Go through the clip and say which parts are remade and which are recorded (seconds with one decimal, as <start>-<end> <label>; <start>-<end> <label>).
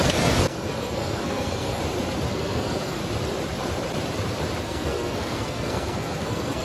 0.0-1.8 remade; 1.8-2.3 recorded; 2.3-3.0 remade; 3.0-4.6 recorded; 4.6-6.6 remade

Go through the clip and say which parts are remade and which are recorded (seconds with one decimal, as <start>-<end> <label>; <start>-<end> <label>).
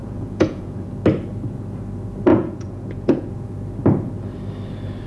0.0-0.9 remade; 0.9-2.3 recorded; 2.3-3.3 remade; 3.3-5.1 recorded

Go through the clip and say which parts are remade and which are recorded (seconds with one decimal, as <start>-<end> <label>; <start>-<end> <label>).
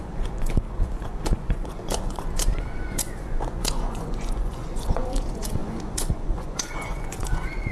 0.0-7.7 remade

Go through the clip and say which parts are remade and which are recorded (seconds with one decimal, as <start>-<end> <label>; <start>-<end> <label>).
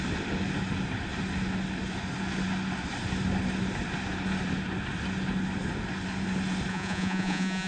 0.0-6.7 recorded; 6.7-7.7 remade